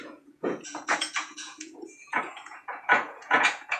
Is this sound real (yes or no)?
no